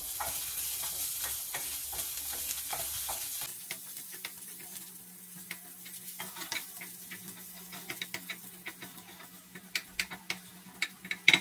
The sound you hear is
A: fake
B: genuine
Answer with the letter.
B